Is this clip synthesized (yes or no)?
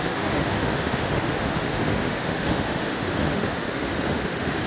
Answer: yes